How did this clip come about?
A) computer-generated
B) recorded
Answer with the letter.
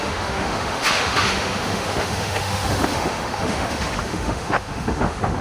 A